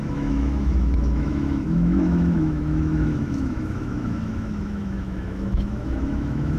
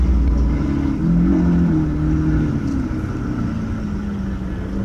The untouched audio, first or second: second